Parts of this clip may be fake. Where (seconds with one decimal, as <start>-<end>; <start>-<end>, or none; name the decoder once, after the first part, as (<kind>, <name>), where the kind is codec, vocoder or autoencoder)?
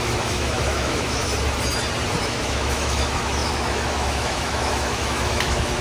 0.0-1.3 (autoencoder, DAC-VAE); 2.2-5.8